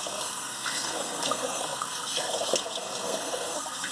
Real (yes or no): no